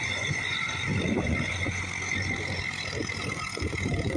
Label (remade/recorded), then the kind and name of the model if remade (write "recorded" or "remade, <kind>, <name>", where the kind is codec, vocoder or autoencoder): remade, vocoder, Vocos